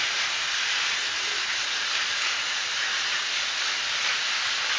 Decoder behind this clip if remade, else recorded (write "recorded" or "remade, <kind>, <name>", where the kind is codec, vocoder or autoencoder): recorded